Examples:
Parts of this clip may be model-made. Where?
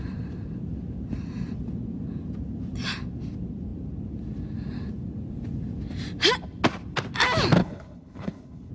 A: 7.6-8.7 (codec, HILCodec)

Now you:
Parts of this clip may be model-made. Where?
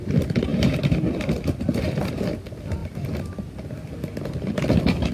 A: none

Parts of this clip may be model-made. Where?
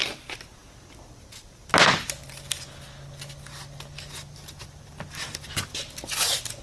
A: none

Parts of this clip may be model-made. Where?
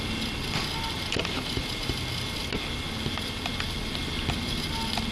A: none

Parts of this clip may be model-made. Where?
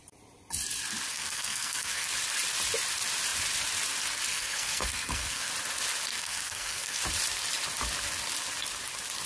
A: 1.1-2.1 (codec, SNAC); 4.3-5.5; 6.1-7.0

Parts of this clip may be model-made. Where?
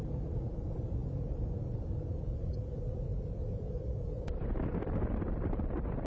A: 1.0-2.4 (vocoder, BigVGAN v2); 3.1-5.0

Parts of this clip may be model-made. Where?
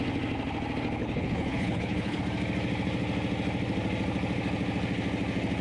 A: 1.0-2.2 (codec, HILCodec)